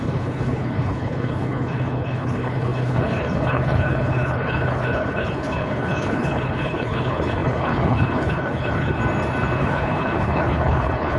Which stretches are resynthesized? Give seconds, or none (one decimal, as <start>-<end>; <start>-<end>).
0.0-9.0; 9.6-11.2